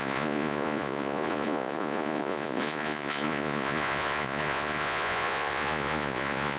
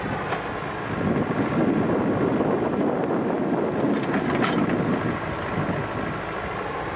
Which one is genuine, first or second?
second